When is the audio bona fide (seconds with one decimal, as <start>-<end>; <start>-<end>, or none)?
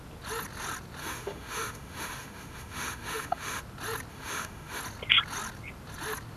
0.0-1.0; 3.6-4.1; 4.8-6.4